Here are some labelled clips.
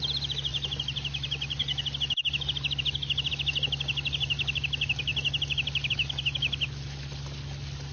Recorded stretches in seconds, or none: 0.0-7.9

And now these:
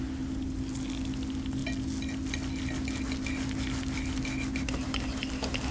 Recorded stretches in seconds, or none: 0.0-5.7

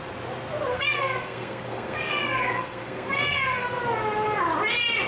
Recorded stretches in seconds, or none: 0.0-0.7; 3.8-5.1